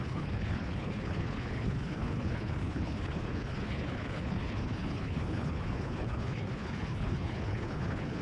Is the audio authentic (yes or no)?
no